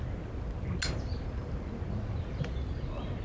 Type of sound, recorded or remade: recorded